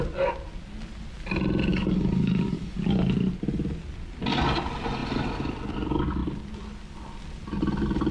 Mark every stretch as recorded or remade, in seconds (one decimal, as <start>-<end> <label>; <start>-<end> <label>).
0.0-1.7 recorded; 1.7-2.8 remade; 2.8-8.1 recorded